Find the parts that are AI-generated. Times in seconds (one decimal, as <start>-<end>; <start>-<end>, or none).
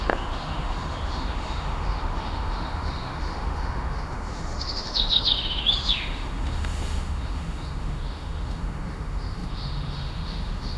0.0-10.8